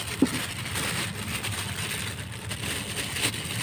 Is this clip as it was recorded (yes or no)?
yes